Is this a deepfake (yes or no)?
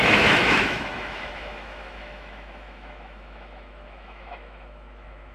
yes